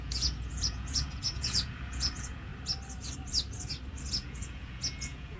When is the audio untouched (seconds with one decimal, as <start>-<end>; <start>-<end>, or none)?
2.5-4.1